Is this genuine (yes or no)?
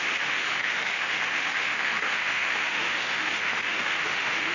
no